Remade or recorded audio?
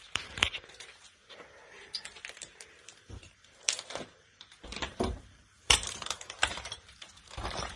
remade